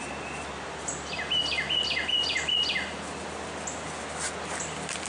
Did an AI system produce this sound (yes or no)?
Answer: no